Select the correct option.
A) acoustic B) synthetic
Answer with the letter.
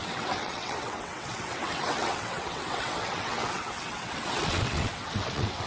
B